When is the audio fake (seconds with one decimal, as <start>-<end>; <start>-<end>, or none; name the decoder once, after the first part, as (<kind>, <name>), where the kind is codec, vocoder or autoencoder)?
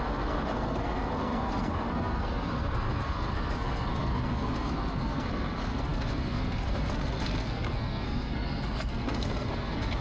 0.0-10.0 (codec, SNAC)